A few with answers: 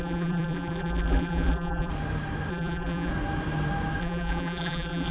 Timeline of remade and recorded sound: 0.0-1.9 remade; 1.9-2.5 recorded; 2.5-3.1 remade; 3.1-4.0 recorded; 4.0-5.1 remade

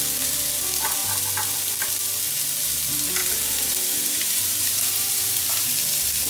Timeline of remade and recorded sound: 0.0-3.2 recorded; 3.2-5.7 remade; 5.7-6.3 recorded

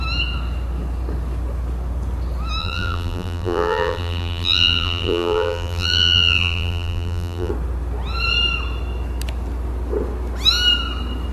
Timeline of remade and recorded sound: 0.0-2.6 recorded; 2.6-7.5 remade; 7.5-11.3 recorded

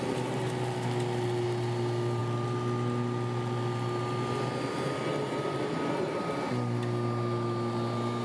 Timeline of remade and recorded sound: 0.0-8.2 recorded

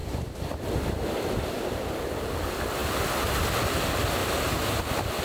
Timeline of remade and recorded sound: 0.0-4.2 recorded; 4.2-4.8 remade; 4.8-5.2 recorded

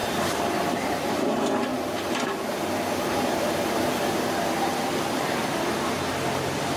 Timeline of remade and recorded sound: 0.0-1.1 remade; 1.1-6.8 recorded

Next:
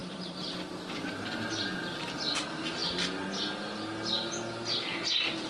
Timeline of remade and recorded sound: 0.0-0.5 remade; 0.5-5.5 recorded